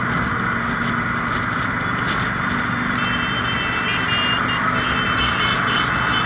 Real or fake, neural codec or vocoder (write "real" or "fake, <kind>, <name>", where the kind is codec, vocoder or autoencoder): real